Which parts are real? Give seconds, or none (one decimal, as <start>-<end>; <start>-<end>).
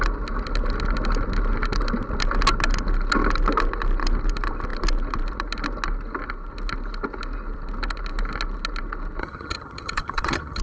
0.0-9.2